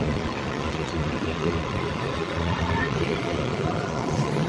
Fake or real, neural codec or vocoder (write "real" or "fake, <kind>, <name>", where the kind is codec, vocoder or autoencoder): fake, vocoder, Vocos